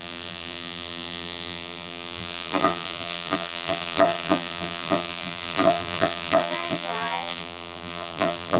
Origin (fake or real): fake